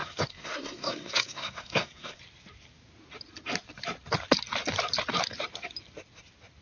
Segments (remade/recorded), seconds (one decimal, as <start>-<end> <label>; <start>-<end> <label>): 0.0-2.2 remade; 2.2-6.6 recorded